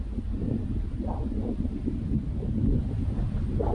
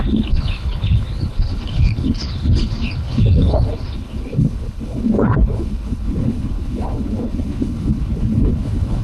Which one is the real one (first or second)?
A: first